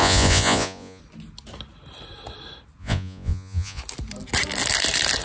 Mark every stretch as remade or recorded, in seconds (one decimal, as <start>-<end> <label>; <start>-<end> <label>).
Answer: 0.0-1.0 remade; 1.0-2.8 recorded; 2.8-3.8 remade; 3.8-5.2 recorded